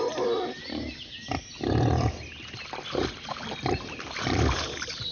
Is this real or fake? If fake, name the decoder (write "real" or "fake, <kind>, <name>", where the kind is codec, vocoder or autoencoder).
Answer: real